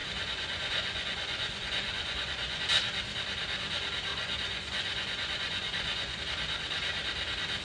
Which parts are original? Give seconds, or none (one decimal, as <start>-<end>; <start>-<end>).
2.6-4.1; 6.2-7.6